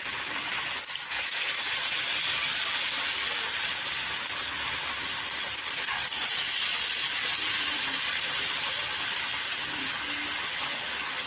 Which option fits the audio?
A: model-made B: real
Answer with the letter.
B